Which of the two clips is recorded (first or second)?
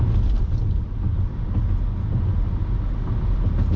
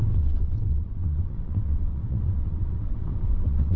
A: first